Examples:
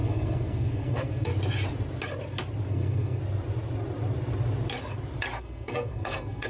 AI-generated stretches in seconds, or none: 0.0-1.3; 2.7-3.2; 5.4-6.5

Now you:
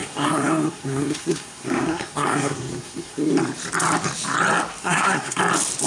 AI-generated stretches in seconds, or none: 0.0-3.3; 4.8-5.4

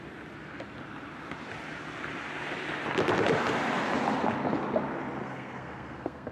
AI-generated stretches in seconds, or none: 5.2-6.3

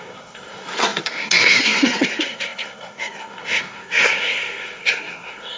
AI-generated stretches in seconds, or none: 0.0-5.6

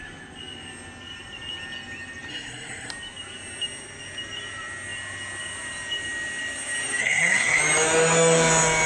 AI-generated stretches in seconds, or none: 2.3-2.9; 7.0-7.6